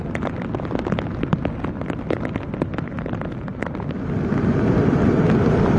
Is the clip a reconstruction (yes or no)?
no